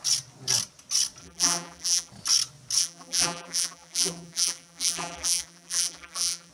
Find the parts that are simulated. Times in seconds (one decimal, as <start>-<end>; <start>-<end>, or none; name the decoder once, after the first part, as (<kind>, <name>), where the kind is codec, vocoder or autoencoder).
1.2-2.1 (vocoder, BigVGAN v2); 2.8-6.5